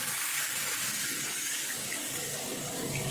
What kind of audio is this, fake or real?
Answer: fake